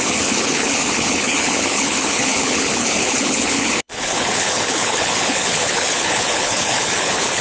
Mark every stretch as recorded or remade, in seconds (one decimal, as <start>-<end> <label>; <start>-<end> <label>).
0.0-7.4 remade